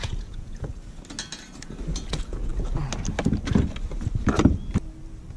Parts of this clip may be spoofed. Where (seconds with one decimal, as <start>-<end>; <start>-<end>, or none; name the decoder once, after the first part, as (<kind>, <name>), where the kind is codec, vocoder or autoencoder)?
0.0-0.7 (vocoder, Vocos); 2.1-2.5